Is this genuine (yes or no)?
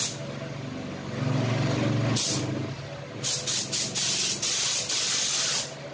yes